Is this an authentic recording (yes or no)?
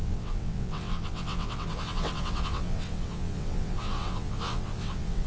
no